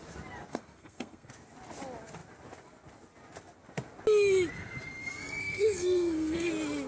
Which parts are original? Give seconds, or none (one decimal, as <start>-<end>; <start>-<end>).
0.0-0.5; 1.3-5.4; 6.5-6.9